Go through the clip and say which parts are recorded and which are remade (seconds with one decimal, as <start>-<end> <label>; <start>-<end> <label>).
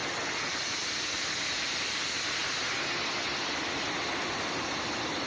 0.0-2.4 remade; 2.4-5.3 recorded